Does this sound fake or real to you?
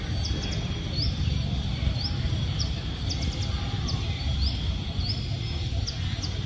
real